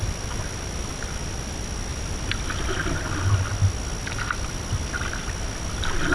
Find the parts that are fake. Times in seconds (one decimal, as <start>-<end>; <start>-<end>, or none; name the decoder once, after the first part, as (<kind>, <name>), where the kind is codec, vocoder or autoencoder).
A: none